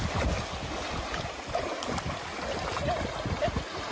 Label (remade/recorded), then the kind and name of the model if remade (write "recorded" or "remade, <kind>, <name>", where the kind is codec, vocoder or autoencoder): recorded